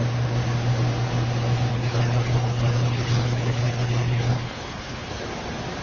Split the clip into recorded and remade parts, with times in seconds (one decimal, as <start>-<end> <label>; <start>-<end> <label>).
0.0-1.7 recorded; 1.7-5.2 remade; 5.2-5.8 recorded